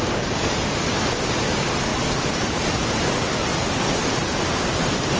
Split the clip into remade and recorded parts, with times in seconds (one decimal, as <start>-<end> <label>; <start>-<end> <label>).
0.0-1.9 recorded; 1.9-2.7 remade; 2.7-3.5 recorded; 3.5-4.3 remade; 4.3-5.2 recorded